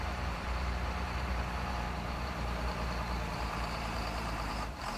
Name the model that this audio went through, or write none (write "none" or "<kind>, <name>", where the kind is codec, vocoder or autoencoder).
vocoder, BigVGAN v2